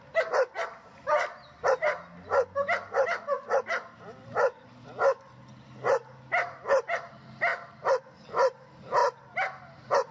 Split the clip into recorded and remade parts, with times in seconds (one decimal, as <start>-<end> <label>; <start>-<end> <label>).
0.0-7.5 remade; 7.5-8.0 recorded; 8.0-9.0 remade; 9.0-9.6 recorded; 9.6-10.1 remade